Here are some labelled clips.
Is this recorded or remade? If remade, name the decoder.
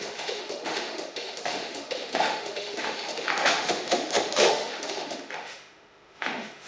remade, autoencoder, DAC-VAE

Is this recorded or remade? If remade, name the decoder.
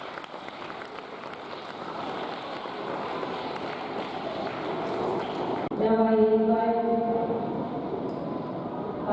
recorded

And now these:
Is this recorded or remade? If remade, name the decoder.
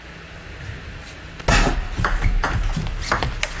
recorded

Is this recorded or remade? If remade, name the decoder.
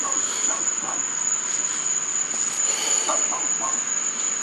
recorded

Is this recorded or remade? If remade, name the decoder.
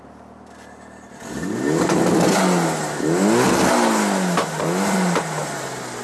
recorded